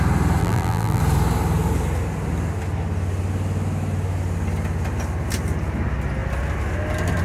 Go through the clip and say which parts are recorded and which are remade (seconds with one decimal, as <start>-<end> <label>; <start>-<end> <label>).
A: 0.0-0.4 recorded; 0.4-1.0 remade; 1.0-7.2 recorded

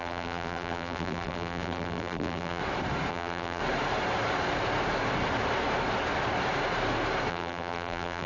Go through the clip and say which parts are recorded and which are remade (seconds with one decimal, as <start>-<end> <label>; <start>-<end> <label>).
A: 0.0-2.6 remade; 2.6-3.1 recorded; 3.1-3.6 remade; 3.6-7.3 recorded; 7.3-8.3 remade

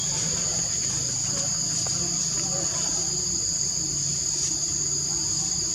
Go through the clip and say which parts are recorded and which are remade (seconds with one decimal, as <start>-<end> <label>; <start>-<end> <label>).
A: 0.0-5.7 recorded